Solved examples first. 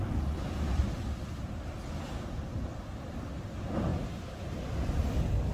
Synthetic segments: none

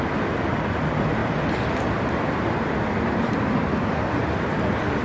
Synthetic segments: none

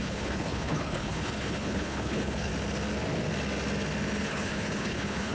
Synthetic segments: 0.0-2.5 (codec, HILCodec); 4.2-5.3

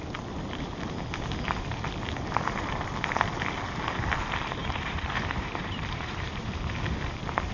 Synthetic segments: 4.6-6.5 (vocoder, BigVGAN v2)

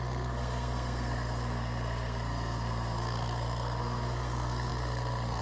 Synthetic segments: 0.0-5.4 (codec, SNAC)

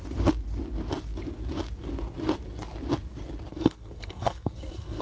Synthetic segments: 3.5-5.0 (codec, SNAC)

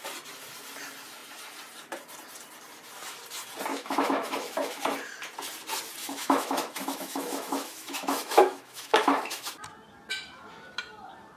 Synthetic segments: 3.7-4.8 (autoencoder, DAC-VAE); 6.0-9.5